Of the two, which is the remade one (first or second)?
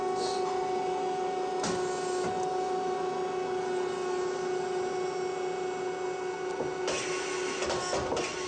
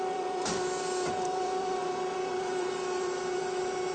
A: second